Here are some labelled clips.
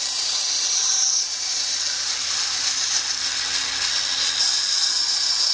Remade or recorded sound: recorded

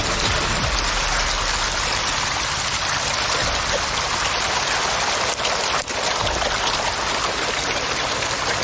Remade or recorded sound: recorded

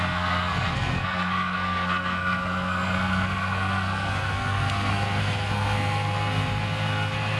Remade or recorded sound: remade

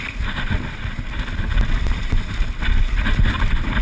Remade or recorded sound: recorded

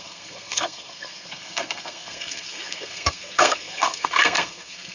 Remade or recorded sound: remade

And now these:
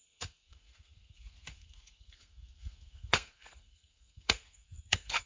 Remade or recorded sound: remade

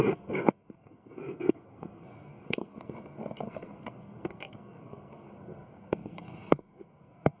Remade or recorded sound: remade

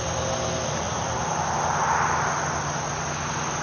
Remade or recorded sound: recorded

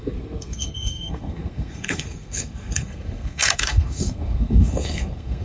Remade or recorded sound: remade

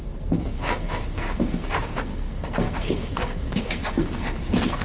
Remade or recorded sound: remade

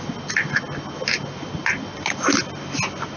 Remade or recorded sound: recorded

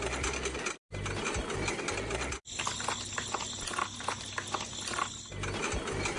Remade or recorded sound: recorded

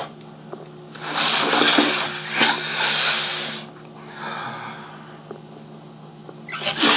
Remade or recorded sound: recorded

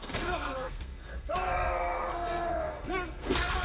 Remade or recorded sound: remade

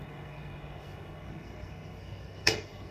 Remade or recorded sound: remade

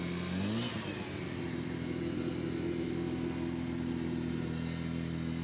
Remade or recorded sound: recorded